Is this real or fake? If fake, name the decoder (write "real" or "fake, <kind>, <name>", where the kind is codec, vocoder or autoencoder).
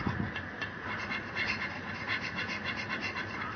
fake, vocoder, Vocos